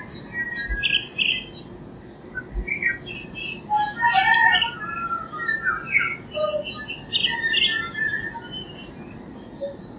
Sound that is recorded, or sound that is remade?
recorded